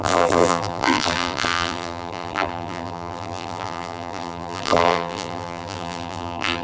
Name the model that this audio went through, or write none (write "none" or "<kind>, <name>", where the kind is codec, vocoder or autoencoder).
vocoder, BigVGAN v2